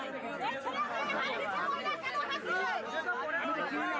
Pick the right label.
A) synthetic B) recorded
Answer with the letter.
B